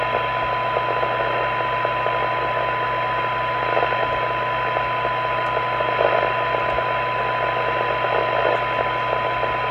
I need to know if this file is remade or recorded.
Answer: recorded